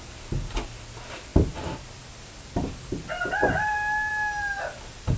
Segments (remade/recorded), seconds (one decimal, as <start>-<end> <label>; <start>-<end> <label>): 0.0-5.2 recorded